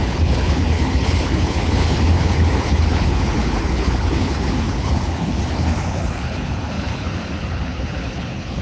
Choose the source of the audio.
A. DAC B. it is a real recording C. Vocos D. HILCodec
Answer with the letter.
D